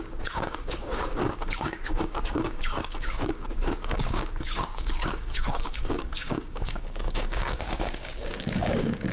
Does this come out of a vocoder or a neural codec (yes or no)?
yes